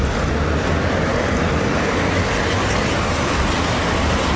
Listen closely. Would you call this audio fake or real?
real